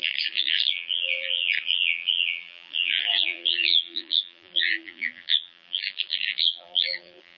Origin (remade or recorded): remade